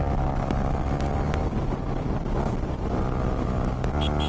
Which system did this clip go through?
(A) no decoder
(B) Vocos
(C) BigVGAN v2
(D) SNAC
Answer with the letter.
A